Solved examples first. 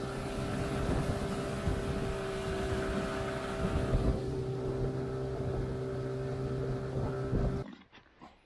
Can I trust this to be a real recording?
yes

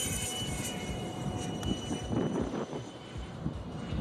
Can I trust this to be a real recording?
no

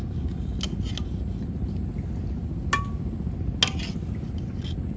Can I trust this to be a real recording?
yes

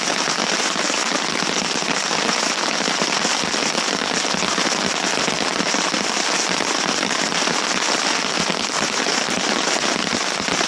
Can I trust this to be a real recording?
yes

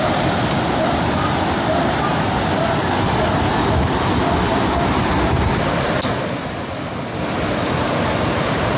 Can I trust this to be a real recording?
yes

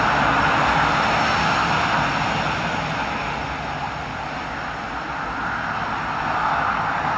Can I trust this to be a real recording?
yes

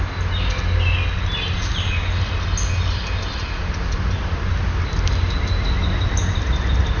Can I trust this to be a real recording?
yes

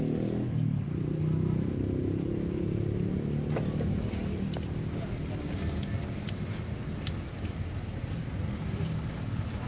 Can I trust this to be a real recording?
yes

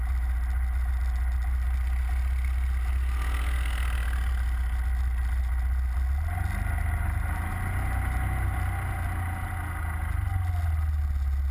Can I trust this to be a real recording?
yes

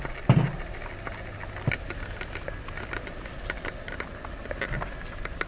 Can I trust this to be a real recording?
yes